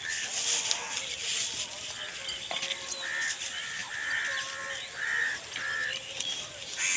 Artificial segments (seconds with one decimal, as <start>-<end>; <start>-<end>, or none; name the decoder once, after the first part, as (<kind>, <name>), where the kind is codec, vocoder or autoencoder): none